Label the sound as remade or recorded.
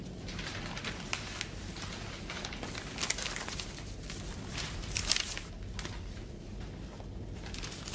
recorded